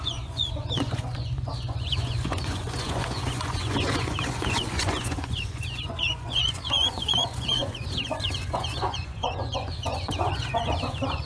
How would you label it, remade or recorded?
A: remade